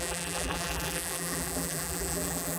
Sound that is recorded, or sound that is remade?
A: remade